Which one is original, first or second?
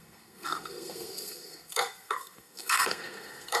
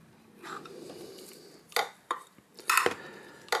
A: second